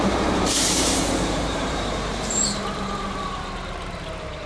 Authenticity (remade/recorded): remade